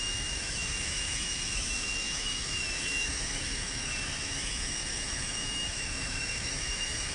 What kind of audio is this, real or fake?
fake